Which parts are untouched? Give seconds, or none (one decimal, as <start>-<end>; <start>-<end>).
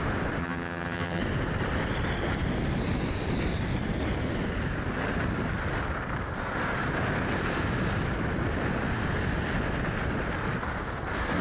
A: 0.0-0.4; 1.2-11.4